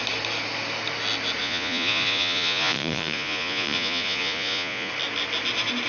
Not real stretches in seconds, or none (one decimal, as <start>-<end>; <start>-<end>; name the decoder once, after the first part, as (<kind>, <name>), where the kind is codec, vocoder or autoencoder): 1.4-4.9 (vocoder, Vocos)